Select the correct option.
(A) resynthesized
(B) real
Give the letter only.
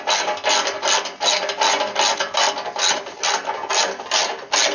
B